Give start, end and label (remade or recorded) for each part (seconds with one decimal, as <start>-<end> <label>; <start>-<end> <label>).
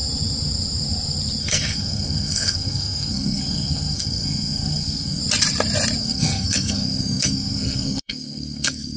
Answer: 0.0-1.4 recorded; 1.4-5.2 remade; 5.2-6.0 recorded; 6.0-9.0 remade